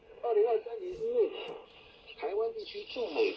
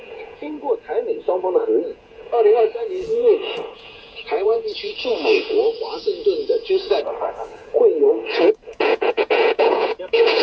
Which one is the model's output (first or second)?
second